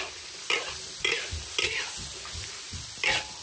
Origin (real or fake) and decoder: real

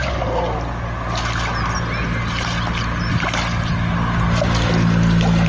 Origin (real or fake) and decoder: real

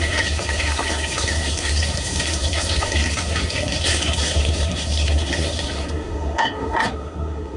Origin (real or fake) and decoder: fake, codec, SNAC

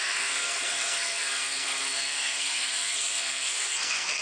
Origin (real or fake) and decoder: fake, codec, SNAC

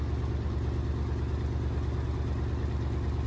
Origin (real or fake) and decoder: real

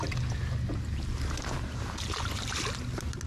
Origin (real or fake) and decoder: real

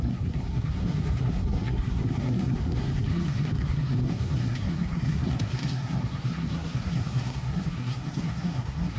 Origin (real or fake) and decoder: fake, codec, SNAC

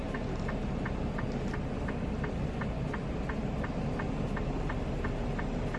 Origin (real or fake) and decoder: real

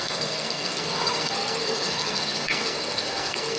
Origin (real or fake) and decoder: fake, codec, SNAC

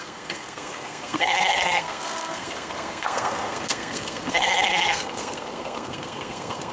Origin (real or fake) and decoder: fake, codec, SNAC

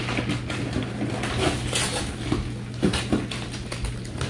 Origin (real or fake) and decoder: real